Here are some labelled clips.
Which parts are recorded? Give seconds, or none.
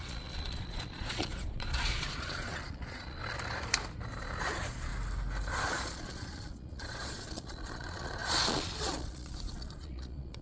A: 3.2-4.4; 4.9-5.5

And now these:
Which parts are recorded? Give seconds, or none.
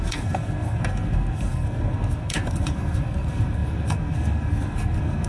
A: none